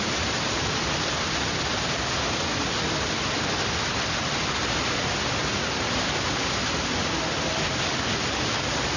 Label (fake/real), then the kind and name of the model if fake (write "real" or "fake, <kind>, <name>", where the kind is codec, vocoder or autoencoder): real